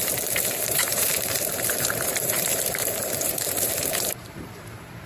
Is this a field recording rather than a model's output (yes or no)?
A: no